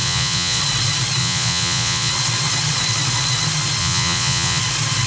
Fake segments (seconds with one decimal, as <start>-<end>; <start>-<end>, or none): 0.0-0.6; 1.2-2.1; 3.8-4.6